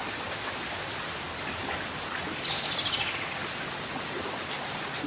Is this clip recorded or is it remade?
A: recorded